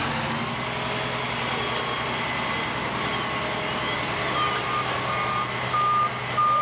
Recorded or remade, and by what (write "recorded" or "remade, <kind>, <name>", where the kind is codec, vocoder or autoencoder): recorded